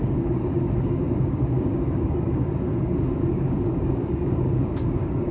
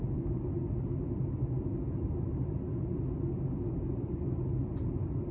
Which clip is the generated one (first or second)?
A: first